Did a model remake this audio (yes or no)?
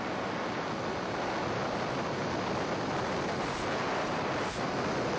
no